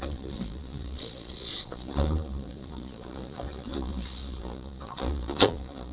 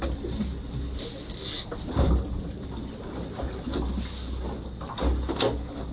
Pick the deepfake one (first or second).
first